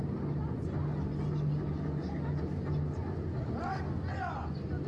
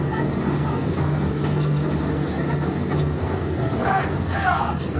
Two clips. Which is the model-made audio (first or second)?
second